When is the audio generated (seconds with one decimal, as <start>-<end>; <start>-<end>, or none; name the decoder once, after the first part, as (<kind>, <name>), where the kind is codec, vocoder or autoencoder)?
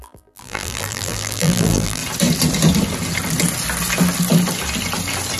0.0-2.0 (vocoder, BigVGAN v2)